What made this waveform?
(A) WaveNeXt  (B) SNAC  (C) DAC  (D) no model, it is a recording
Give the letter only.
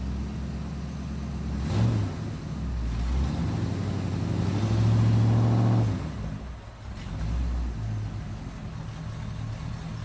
D